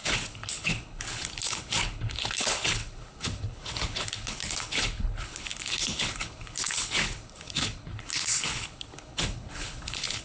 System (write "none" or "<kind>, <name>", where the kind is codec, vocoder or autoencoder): codec, HILCodec